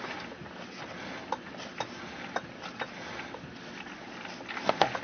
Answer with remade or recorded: recorded